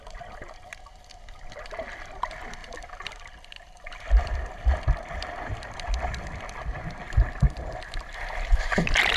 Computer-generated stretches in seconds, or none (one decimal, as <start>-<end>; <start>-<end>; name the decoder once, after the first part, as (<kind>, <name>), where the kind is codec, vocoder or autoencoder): 2.6-4.8 (vocoder, BigVGAN v2)